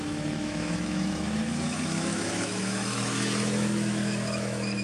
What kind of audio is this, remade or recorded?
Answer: remade